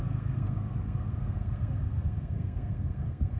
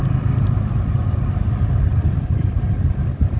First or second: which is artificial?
first